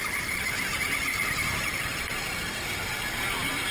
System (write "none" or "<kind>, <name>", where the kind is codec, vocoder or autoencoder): none